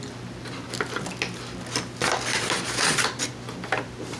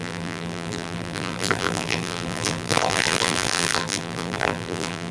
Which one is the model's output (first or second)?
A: second